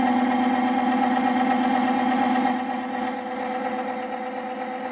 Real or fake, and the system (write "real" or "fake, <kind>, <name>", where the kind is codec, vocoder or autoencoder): real